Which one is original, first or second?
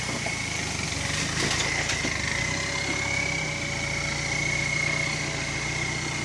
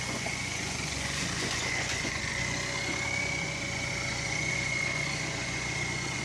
first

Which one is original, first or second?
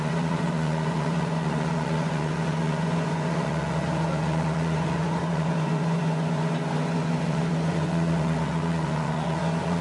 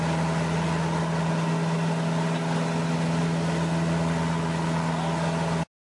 second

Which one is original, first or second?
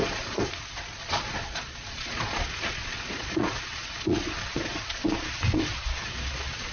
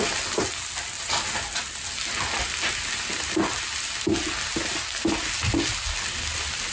second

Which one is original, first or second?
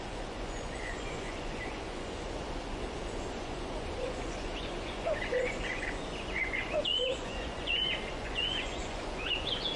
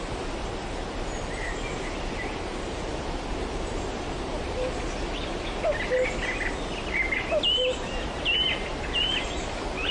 second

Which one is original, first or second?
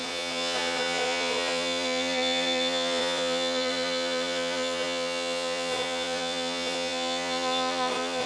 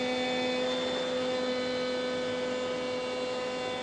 second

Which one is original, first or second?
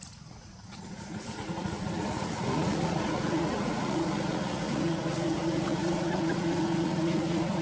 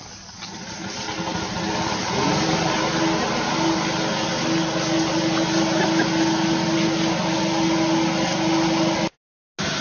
second